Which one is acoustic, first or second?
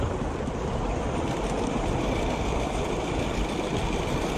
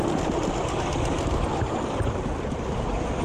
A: first